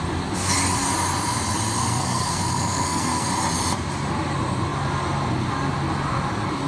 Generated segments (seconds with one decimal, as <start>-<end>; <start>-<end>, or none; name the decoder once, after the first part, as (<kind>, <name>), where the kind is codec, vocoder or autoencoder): 1.8-3.3 (codec, SNAC)